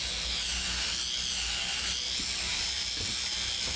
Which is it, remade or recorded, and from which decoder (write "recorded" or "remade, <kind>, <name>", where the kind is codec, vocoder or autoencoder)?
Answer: recorded